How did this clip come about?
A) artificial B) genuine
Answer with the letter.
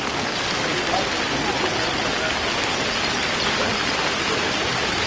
B